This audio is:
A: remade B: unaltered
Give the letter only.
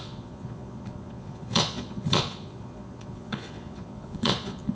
A